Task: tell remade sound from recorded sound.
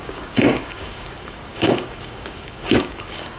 remade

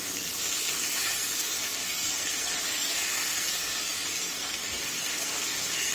remade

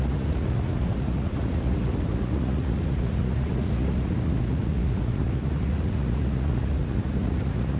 remade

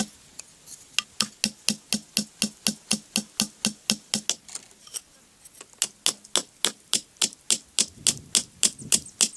recorded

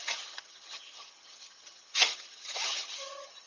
remade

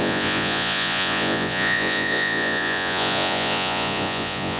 remade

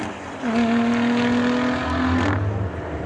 recorded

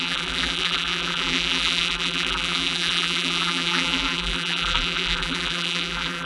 remade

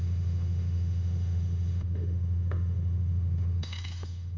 remade